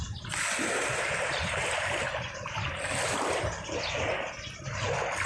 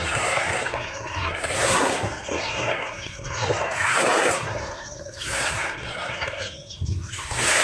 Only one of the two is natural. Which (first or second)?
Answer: first